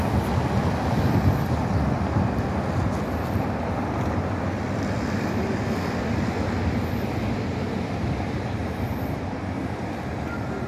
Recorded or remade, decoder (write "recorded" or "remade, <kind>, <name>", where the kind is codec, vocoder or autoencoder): recorded